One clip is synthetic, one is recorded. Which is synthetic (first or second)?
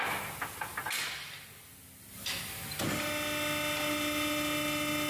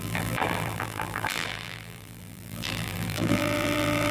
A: second